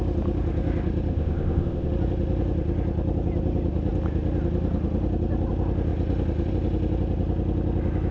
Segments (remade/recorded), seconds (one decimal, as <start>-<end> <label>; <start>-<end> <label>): 0.0-1.1 recorded; 1.1-1.9 remade; 1.9-8.1 recorded